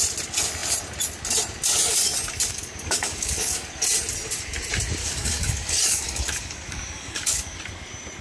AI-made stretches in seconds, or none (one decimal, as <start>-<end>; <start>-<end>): 2.5-3.7; 5.0-7.6